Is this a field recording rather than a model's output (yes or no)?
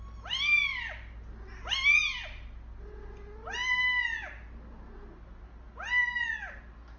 yes